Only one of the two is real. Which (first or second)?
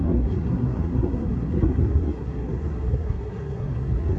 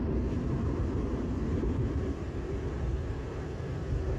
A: second